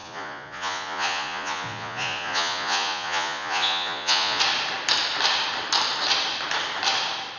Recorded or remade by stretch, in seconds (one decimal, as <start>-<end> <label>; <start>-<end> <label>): 0.0-4.4 remade; 4.4-7.4 recorded